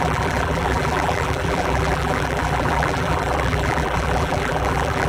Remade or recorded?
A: remade